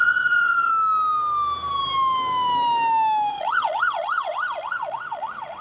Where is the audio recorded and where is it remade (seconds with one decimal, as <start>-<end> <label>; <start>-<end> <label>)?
0.0-0.7 remade; 0.7-3.3 recorded; 3.3-5.6 remade